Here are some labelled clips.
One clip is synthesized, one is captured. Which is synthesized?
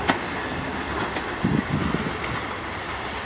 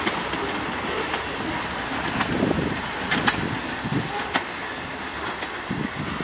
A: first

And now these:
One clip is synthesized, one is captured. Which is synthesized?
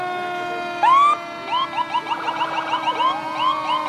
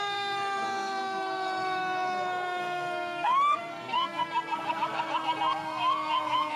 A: second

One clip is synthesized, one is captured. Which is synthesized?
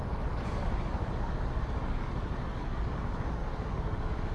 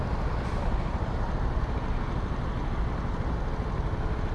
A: first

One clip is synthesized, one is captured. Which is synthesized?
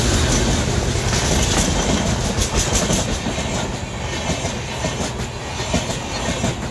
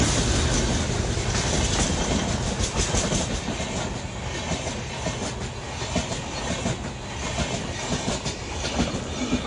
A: second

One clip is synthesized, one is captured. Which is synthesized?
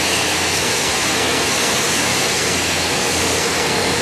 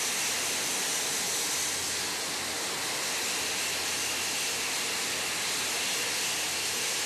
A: first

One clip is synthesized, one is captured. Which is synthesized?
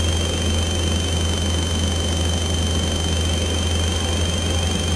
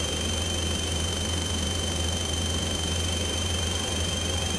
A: second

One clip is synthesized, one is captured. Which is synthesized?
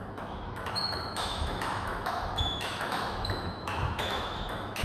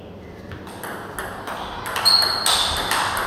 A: first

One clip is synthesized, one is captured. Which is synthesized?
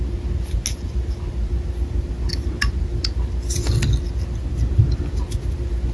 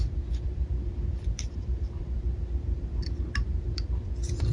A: second